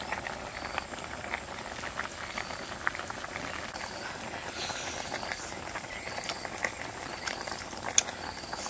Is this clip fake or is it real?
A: real